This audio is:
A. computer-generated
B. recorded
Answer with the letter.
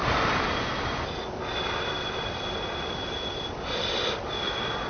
B